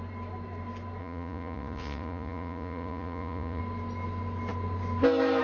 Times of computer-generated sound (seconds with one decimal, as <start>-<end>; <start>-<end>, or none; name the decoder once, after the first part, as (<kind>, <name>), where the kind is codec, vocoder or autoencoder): 1.0-3.6 (vocoder, Vocos)